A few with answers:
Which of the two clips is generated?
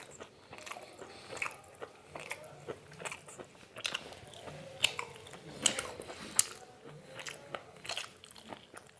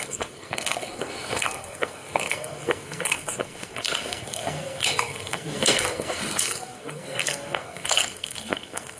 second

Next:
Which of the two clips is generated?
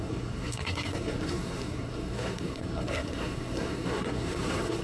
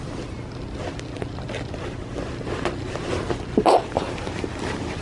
first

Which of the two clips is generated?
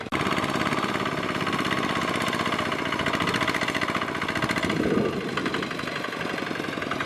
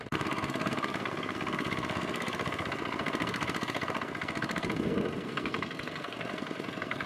second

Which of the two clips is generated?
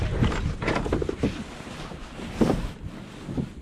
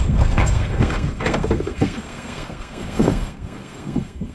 second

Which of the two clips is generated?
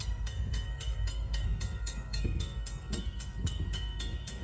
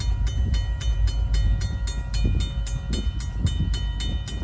first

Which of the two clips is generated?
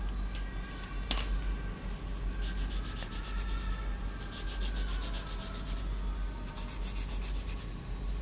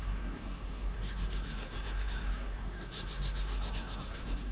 second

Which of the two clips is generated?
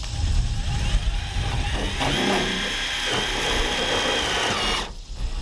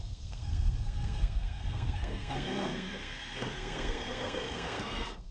second